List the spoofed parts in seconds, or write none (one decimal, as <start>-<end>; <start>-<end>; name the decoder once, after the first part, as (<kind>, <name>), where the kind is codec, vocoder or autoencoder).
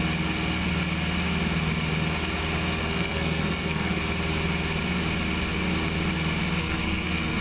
2.8-4.0 (codec, SNAC); 6.6-7.4